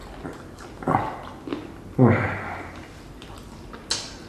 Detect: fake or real real